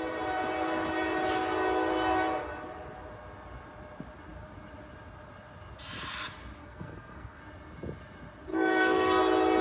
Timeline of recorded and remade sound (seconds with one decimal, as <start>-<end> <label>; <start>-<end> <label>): 0.0-6.6 recorded; 6.6-7.4 remade; 7.4-8.5 recorded; 8.5-9.2 remade; 9.2-9.6 recorded